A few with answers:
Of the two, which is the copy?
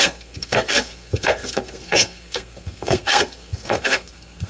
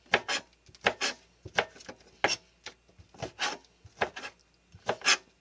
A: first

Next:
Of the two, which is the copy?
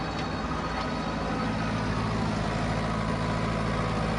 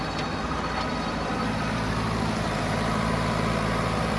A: second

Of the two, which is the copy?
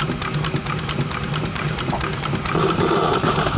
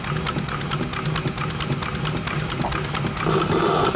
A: first